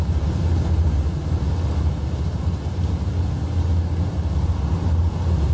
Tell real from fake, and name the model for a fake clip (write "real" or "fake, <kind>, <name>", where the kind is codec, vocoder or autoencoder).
real